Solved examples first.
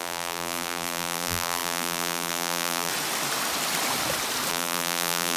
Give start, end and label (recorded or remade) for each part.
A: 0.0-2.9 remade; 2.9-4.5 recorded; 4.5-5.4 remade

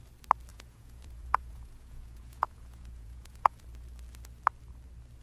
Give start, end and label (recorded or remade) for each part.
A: 0.0-0.5 recorded; 0.5-3.6 remade; 3.6-5.2 recorded

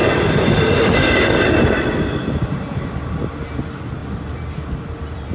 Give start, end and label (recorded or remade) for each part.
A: 0.0-5.3 recorded